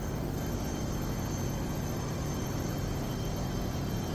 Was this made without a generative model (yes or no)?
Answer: no